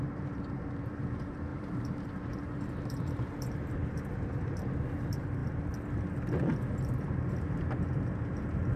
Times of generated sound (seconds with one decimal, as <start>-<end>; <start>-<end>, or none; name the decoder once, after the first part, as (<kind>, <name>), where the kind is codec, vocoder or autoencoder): 0.0-5.4 (vocoder, BigVGAN v2); 7.3-8.8